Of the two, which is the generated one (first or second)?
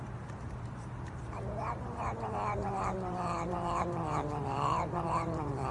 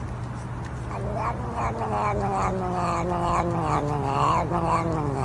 first